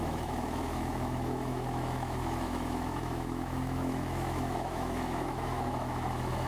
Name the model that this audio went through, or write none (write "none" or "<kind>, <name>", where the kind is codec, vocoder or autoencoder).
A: autoencoder, DAC-VAE